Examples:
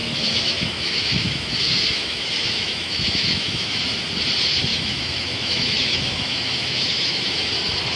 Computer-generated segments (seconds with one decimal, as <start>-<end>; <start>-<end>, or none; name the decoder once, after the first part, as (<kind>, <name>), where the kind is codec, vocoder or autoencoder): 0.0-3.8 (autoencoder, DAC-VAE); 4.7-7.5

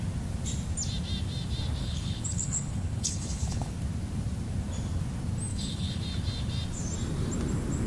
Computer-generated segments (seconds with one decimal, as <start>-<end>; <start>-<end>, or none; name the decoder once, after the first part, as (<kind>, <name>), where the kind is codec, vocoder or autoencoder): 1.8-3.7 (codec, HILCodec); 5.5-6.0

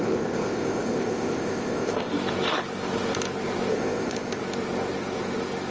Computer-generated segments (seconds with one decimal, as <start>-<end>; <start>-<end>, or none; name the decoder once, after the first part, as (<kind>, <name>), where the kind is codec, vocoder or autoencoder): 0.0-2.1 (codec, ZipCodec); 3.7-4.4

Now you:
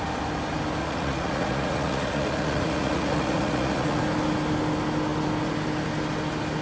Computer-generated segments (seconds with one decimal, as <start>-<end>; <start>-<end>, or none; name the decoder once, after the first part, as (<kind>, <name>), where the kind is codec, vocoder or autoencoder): 0.8-4.0 (vocoder, Vocos)

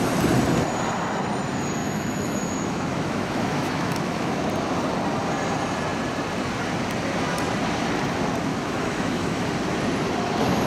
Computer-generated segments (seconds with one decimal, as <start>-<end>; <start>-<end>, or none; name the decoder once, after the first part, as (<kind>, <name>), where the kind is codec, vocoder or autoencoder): 1.8-4.5 (autoencoder, DAC-VAE); 8.5-9.5

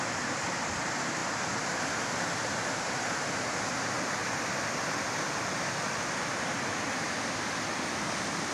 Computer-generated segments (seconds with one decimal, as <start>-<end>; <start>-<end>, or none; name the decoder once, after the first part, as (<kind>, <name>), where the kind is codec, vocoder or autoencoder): none